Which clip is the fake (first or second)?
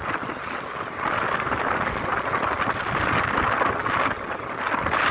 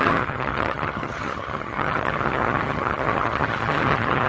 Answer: second